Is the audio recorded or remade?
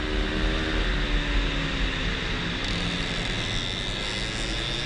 recorded